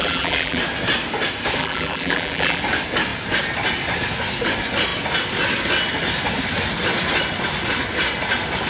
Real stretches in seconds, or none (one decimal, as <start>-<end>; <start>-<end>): 0.6-1.6; 2.6-8.7